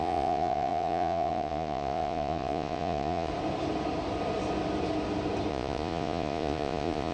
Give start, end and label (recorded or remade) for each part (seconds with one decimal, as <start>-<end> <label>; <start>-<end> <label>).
0.0-3.3 remade; 3.3-5.5 recorded; 5.5-7.1 remade